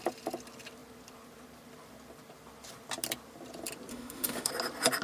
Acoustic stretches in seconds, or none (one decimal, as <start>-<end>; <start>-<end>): 0.0-3.9; 4.5-5.0